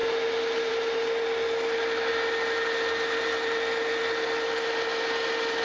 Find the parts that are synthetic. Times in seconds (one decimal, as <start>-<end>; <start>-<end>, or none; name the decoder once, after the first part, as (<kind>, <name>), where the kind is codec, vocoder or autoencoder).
none